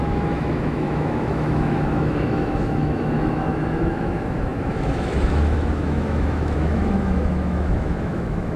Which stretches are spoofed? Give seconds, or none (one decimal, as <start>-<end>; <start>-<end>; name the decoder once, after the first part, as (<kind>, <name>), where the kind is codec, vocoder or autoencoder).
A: 0.0-8.6 (autoencoder, DAC-VAE)